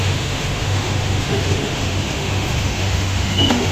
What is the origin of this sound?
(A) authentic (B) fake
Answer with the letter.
B